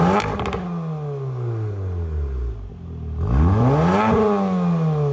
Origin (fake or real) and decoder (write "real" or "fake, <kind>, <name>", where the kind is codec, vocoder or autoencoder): real